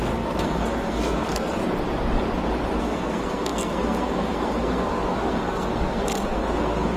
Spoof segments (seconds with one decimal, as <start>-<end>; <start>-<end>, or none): 0.0-1.6; 2.8-7.0